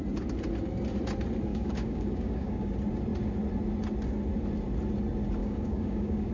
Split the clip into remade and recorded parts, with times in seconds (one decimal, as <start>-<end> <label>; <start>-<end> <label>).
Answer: 0.0-1.5 recorded; 1.5-2.7 remade; 2.7-5.4 recorded; 5.4-6.3 remade